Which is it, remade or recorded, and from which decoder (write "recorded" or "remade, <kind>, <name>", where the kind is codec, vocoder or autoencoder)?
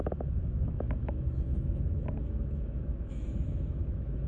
remade, autoencoder, DAC-VAE